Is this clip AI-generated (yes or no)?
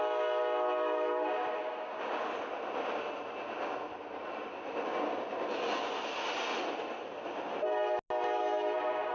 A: no